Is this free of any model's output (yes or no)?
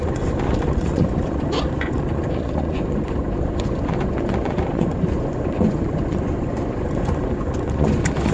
no